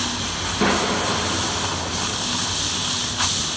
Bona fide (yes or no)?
yes